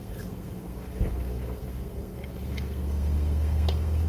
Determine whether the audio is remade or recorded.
remade